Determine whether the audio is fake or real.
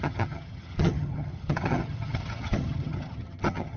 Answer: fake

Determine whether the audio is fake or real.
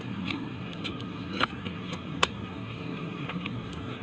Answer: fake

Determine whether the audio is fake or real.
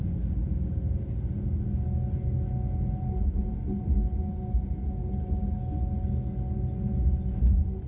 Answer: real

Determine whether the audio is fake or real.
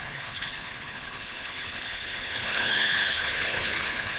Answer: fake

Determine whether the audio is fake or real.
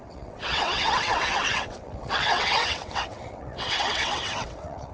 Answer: fake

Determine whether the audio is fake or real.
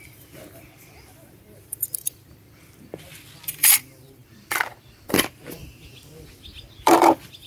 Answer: fake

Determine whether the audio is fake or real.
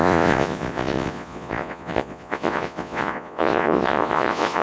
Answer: fake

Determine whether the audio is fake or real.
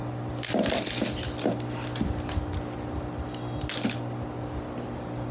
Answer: real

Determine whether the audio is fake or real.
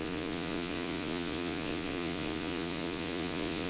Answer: fake